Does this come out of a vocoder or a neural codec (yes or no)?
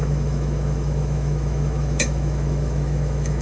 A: yes